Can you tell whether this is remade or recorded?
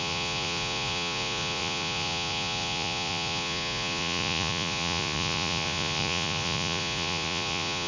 remade